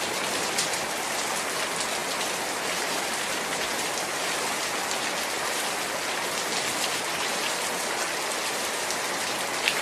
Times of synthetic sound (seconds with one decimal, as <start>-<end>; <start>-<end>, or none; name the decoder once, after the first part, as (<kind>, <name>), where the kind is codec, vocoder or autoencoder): none